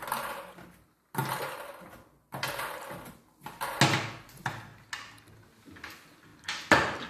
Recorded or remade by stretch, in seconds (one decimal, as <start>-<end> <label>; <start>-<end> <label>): 0.0-7.1 recorded